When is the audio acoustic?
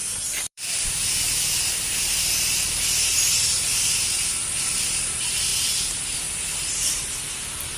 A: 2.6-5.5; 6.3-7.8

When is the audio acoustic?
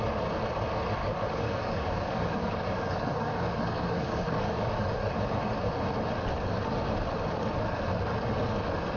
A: 0.0-1.0; 5.1-9.0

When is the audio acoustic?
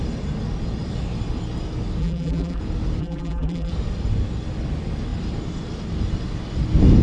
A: 0.0-2.0; 2.6-3.0; 3.7-7.0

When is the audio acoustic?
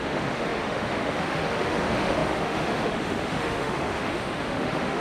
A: none